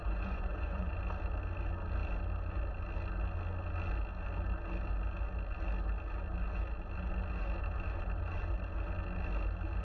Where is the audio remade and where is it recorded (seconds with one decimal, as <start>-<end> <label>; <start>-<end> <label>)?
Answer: 0.0-0.9 remade; 0.9-9.8 recorded